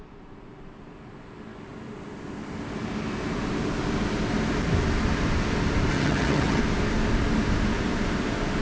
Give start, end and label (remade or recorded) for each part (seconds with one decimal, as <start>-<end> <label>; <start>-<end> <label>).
0.0-5.9 recorded; 5.9-6.6 remade; 6.6-8.6 recorded